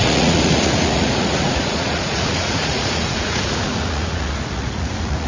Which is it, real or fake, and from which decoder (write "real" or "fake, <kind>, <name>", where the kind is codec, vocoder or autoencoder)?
fake, vocoder, Vocos